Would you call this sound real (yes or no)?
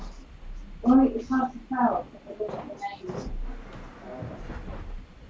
yes